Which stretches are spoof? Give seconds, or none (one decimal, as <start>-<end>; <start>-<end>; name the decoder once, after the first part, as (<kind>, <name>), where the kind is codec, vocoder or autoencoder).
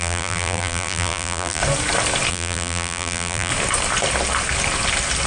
0.0-1.6 (vocoder, BigVGAN v2); 2.3-3.5